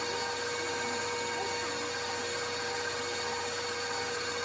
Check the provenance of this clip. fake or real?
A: real